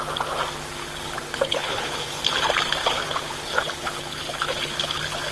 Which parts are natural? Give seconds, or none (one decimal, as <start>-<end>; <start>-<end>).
0.0-0.8; 2.3-2.8